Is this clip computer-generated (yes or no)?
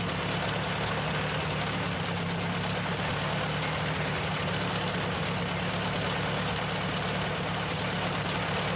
no